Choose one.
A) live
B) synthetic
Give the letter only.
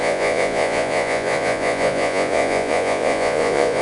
B